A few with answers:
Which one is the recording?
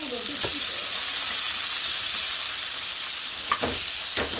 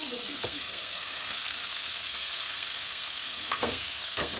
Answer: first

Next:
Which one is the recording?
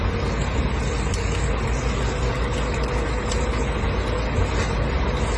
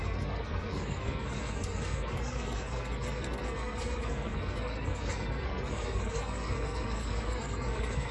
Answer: first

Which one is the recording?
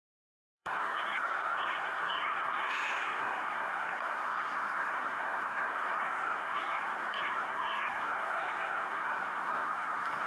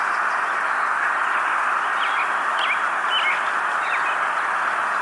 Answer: second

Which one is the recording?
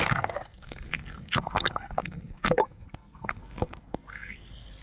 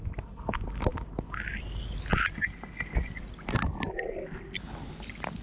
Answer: second